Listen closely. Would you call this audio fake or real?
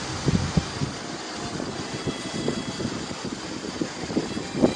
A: real